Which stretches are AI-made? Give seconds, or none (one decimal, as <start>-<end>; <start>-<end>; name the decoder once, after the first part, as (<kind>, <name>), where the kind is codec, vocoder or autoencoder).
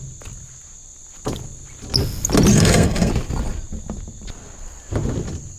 2.5-3.1 (codec, SNAC)